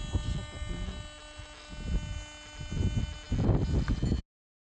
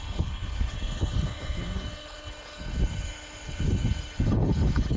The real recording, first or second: first